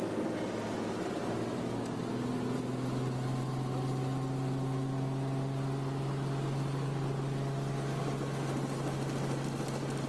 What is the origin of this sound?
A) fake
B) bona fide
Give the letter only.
B